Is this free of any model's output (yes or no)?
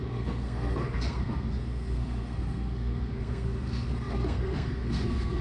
no